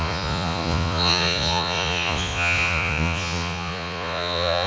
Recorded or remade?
remade